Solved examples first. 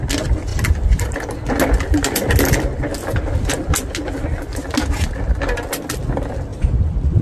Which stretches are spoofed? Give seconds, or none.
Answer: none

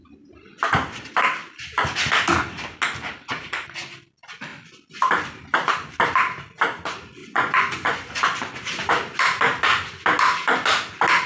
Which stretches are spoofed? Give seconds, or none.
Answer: 7.2-8.1 (vocoder, Vocos)

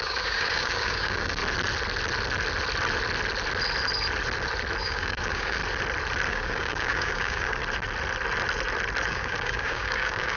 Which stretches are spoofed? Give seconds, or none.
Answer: 0.0-1.4 (codec, DAC); 4.8-5.6; 6.3-7.6; 9.1-10.4

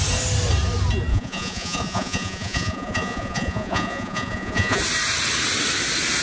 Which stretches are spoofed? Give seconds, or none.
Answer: 1.1-4.8 (vocoder, Vocos)

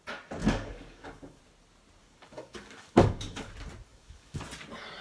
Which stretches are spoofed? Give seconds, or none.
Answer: 0.4-1.4 (codec, DAC); 2.0-3.5; 3.9-4.4